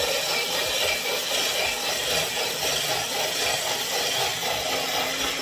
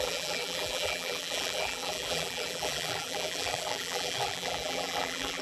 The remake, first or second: second